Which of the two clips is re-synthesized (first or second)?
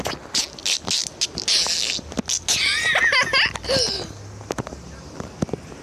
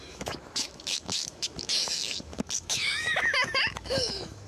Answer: second